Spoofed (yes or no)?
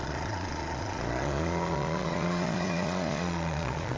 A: yes